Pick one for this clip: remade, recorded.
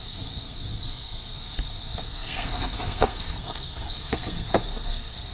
remade